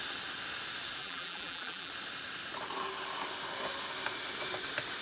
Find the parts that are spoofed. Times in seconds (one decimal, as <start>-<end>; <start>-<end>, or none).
1.0-1.9